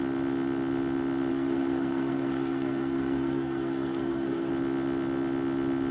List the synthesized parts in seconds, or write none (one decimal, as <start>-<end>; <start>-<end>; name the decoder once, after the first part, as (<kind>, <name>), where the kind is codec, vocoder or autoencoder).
1.3-4.5 (codec, SNAC)